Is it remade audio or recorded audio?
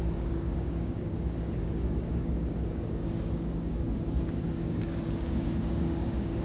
remade